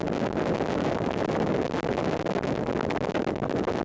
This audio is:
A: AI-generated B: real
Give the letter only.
B